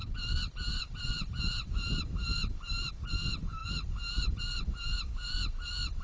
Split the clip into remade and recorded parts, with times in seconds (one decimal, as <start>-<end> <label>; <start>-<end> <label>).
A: 0.0-6.0 recorded